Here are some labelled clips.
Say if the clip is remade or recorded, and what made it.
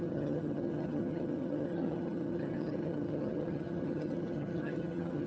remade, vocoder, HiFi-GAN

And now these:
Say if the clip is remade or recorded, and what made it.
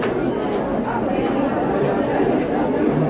recorded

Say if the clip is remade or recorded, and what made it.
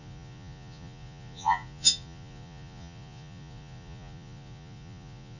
remade, vocoder, Vocos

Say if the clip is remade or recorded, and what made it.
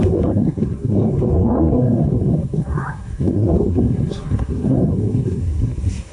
remade, codec, SNAC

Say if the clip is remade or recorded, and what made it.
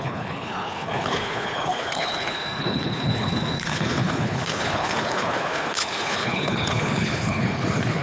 remade, codec, HILCodec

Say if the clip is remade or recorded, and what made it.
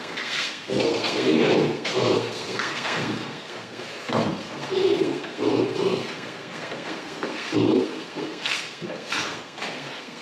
remade, codec, SNAC